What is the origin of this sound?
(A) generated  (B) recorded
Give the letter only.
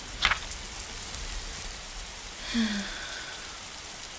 B